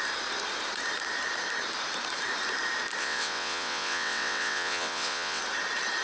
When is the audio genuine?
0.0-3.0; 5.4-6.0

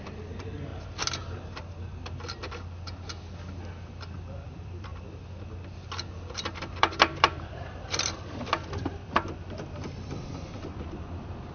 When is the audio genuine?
0.7-4.5; 4.9-6.3

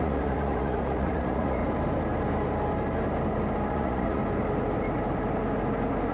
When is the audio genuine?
1.6-3.7; 4.2-6.1

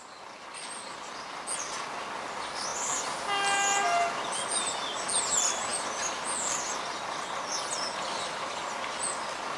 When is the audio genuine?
0.0-9.6

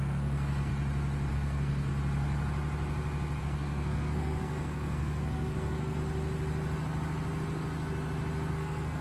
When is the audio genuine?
0.7-1.3; 1.9-3.4; 6.0-8.5